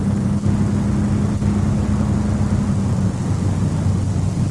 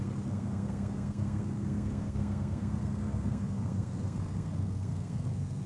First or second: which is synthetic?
second